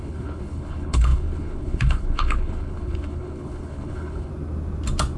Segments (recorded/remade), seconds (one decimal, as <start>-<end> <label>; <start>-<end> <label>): 0.0-4.3 remade; 4.3-5.2 recorded